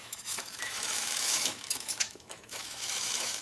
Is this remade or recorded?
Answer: remade